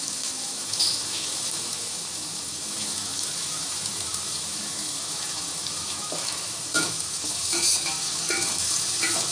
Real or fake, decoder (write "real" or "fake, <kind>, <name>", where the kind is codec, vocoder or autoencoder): fake, autoencoder, DAC-VAE